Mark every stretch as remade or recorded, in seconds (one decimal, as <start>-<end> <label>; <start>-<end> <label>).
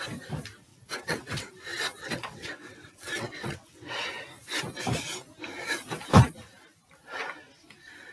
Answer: 0.0-0.7 recorded; 0.7-1.5 remade; 1.5-2.0 recorded; 2.0-4.1 remade; 4.1-8.1 recorded